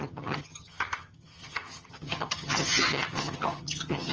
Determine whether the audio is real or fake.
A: fake